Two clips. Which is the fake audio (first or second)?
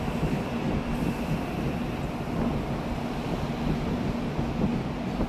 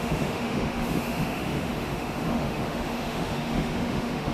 second